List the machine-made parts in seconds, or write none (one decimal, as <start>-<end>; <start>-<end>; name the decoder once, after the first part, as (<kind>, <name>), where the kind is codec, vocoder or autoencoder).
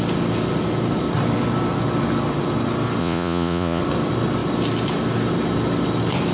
3.0-3.8 (vocoder, Vocos)